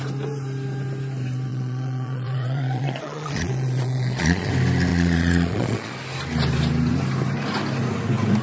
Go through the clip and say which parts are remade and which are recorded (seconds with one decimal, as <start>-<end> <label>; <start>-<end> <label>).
0.0-1.5 recorded; 1.5-4.5 remade; 4.5-4.9 recorded; 4.9-5.9 remade; 5.9-8.4 recorded